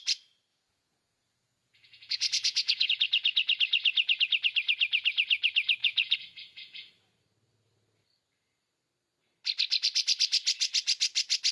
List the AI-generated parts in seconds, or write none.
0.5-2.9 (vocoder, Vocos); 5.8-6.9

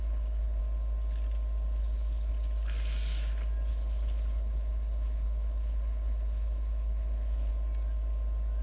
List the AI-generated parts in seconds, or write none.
0.0-0.6 (codec, HILCodec); 1.8-2.3; 3.7-7.5